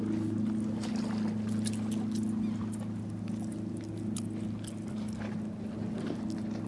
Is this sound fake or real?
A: real